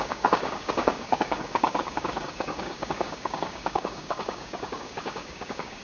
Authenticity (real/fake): fake